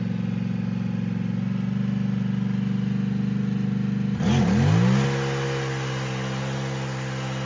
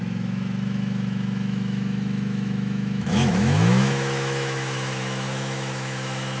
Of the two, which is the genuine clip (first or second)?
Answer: first